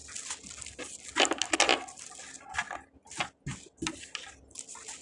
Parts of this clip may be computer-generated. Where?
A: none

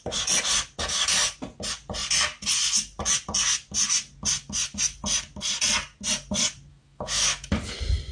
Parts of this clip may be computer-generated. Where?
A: 6.7-7.5